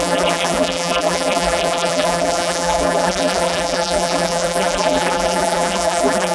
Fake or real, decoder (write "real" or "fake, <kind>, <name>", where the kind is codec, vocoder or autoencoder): fake, vocoder, BigVGAN v2